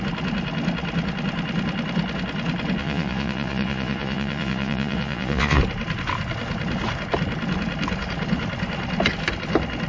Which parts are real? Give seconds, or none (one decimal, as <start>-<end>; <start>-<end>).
0.0-2.8; 5.6-9.9